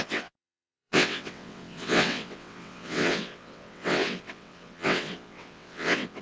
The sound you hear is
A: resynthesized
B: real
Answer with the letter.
A